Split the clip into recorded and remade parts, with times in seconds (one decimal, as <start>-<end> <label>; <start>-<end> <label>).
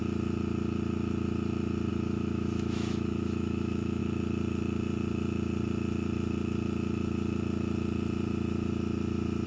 0.0-1.9 recorded; 1.9-4.0 remade; 4.0-9.5 recorded